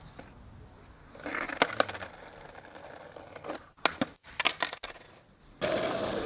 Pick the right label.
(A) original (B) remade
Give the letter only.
A